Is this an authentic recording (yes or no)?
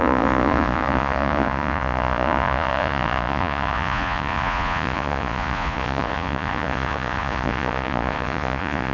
no